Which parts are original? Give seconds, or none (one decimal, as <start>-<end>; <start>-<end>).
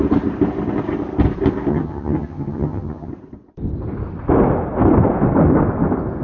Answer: 0.0-1.7; 3.1-6.2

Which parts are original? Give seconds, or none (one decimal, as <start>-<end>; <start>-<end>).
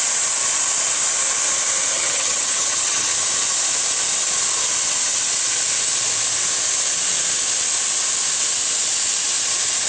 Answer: 0.0-1.9; 3.1-9.9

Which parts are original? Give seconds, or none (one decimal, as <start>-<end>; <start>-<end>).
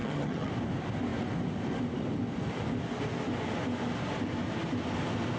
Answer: 0.5-5.4